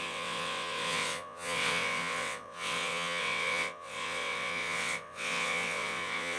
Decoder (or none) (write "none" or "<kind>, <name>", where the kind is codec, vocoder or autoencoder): vocoder, WaveNeXt